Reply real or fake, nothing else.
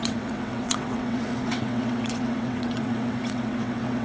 fake